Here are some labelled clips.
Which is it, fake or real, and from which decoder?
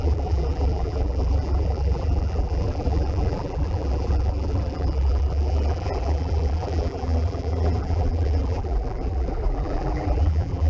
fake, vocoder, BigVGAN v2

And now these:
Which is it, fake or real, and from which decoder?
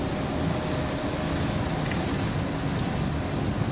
real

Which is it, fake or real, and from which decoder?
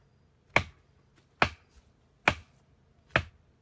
real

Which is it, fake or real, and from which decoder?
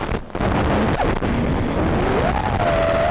real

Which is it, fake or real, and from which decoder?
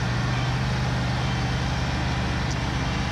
real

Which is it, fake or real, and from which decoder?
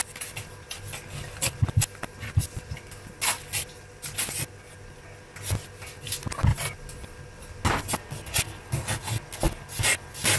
real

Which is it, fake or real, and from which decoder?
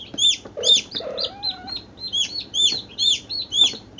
fake, vocoder, BigVGAN v2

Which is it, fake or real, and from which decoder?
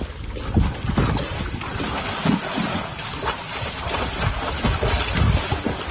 real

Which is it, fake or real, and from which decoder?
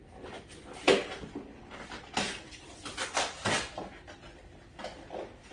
real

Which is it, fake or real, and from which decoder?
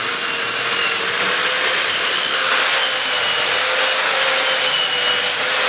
real